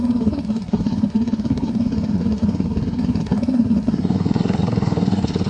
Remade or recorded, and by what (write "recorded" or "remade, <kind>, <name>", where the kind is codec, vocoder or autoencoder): remade, codec, SNAC